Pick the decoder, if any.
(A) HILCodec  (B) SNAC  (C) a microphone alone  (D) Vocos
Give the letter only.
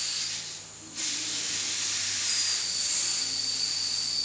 C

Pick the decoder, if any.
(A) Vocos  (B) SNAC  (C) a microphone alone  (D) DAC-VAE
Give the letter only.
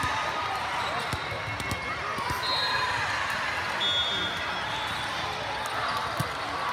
C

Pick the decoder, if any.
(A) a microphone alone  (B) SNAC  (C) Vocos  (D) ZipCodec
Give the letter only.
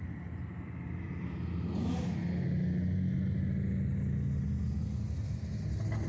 A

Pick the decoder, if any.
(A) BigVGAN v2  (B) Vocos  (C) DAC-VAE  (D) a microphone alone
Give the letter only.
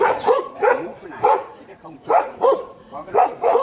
B